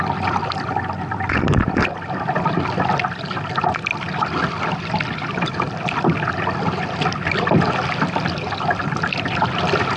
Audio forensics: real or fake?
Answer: real